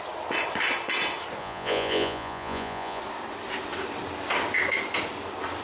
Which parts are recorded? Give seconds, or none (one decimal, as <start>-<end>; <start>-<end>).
0.0-1.4; 3.0-5.6